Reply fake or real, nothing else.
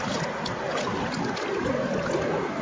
real